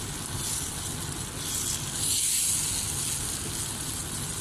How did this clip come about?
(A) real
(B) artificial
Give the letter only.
A